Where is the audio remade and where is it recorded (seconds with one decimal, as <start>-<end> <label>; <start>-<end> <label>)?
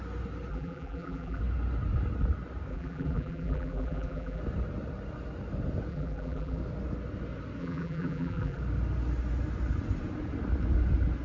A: 0.0-0.5 recorded; 0.5-1.4 remade; 1.4-2.7 recorded; 2.7-4.4 remade; 4.4-5.9 recorded; 5.9-6.6 remade; 6.6-7.6 recorded; 7.6-8.6 remade; 8.6-11.2 recorded